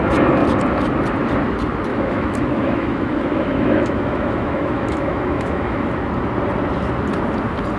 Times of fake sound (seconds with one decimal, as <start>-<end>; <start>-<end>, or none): 1.9-5.9